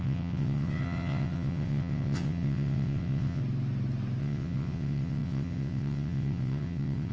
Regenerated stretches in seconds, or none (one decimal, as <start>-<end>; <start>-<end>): 0.0-3.4; 4.2-7.1